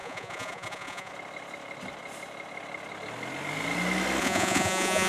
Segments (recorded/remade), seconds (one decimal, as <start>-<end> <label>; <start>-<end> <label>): 0.0-1.1 remade; 1.1-4.2 recorded; 4.2-5.1 remade